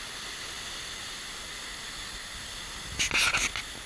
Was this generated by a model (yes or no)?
no